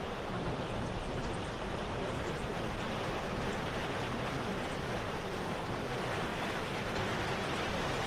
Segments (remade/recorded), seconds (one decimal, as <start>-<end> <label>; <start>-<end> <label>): 0.0-6.3 remade; 6.3-6.9 recorded; 6.9-8.1 remade

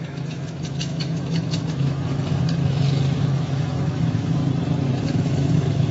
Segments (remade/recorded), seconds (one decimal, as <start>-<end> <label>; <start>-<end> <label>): 0.0-4.4 remade; 4.4-5.0 recorded; 5.0-5.9 remade

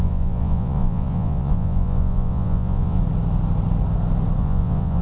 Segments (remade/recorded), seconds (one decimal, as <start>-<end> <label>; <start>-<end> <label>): 0.0-3.0 remade; 3.0-4.4 recorded; 4.4-5.0 remade

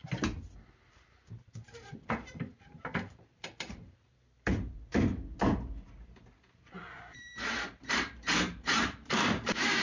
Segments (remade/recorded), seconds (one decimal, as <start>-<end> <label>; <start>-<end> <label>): 0.0-0.9 recorded; 0.9-5.1 remade; 5.1-6.6 recorded; 6.6-9.8 remade